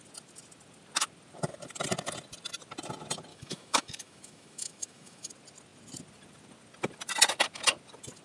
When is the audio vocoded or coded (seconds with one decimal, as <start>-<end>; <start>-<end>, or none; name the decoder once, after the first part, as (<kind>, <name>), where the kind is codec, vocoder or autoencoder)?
3.3-5.3 (autoencoder, DAC-VAE)